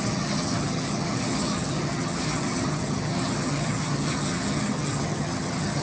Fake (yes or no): yes